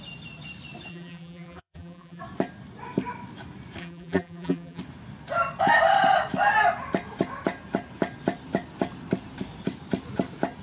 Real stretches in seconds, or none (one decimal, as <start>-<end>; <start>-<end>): 0.0-0.9; 2.2-3.8; 4.8-10.6

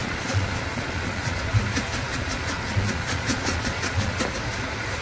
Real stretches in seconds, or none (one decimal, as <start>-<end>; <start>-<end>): 1.5-2.1; 4.2-5.0

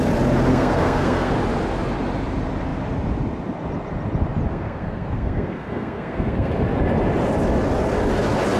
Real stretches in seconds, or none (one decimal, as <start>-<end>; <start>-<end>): 0.0-0.5; 1.3-4.5; 6.5-8.6

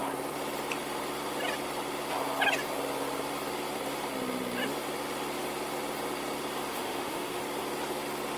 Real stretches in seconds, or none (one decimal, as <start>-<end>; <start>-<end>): 0.0-6.7; 7.4-8.4